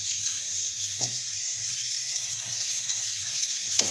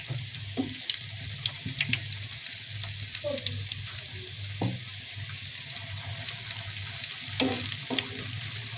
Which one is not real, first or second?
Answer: first